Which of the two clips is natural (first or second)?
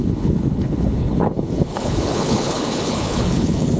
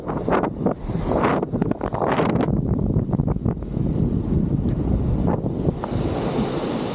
second